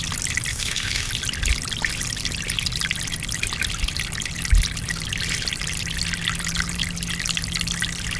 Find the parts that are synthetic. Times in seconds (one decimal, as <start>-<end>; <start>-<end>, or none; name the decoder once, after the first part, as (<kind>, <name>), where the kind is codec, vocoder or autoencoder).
0.5-1.1 (autoencoder, DAC-VAE)